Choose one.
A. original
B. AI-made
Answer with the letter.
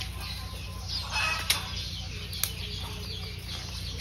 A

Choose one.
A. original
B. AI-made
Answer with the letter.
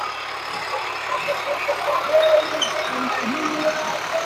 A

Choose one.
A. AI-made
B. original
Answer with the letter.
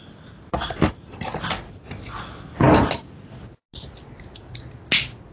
B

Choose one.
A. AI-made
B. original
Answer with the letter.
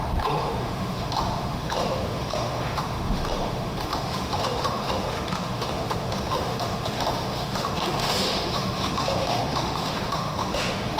A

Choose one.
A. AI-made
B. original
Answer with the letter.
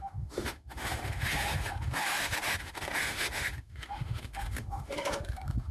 A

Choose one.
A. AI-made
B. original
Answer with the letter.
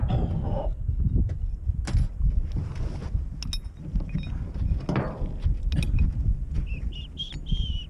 B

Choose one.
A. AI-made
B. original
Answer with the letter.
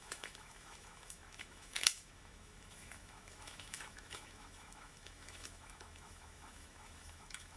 A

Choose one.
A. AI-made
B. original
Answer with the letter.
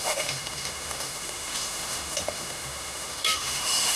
A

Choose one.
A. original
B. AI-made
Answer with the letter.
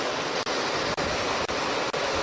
A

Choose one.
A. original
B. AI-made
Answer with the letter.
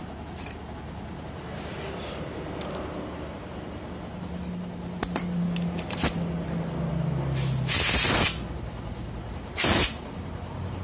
A